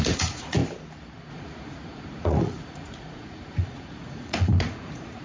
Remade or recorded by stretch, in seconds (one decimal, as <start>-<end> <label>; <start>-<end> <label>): 0.0-0.6 remade; 0.6-1.3 recorded; 1.3-5.2 remade